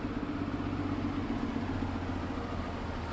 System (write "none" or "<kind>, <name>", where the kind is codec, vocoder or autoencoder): none